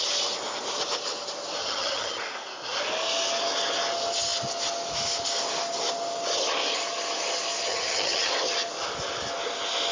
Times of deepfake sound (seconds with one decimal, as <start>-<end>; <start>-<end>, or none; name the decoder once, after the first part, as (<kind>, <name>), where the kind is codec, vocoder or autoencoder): 1.6-2.2 (vocoder, HiFi-GAN); 7.7-8.3